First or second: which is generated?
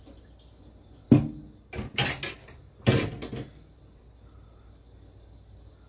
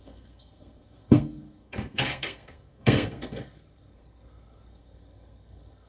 second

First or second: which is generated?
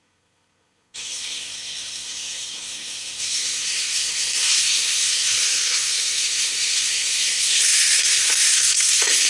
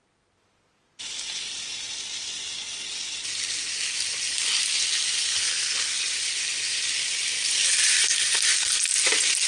first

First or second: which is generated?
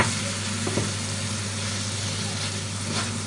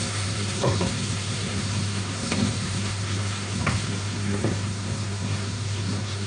second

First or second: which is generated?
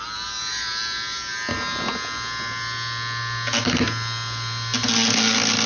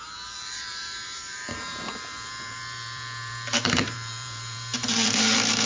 second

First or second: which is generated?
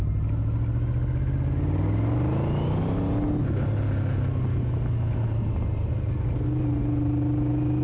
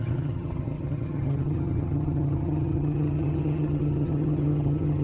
second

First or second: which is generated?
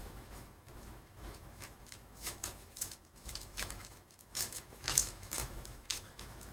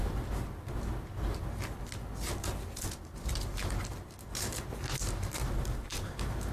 first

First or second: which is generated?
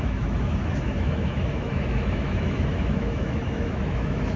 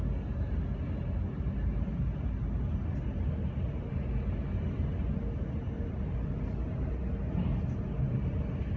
first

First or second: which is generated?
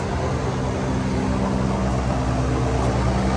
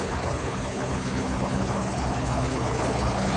second